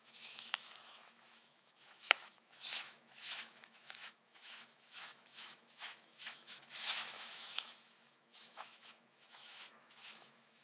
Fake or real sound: fake